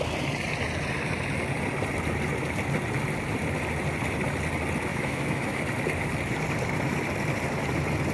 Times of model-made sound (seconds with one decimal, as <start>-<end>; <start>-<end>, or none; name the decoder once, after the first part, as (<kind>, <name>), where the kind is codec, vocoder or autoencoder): 4.9-5.6 (autoencoder, DAC-VAE)